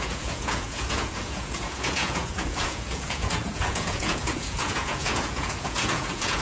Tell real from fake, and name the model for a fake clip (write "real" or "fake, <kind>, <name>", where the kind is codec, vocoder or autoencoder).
fake, vocoder, Vocos